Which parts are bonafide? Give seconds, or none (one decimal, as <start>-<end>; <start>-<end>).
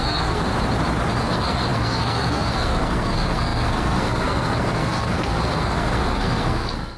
0.5-1.2